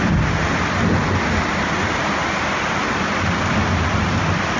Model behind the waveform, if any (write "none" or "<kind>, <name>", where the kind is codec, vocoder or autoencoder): none